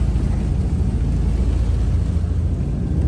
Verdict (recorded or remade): recorded